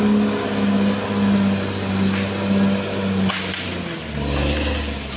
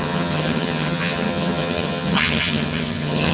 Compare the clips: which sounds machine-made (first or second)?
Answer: second